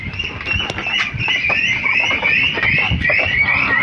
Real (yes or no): no